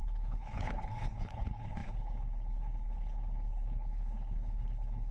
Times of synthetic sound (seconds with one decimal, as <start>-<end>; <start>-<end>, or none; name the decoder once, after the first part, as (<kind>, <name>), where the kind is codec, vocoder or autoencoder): 0.0-5.1 (codec, HILCodec)